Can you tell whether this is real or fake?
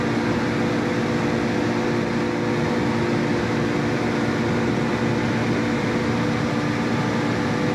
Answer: real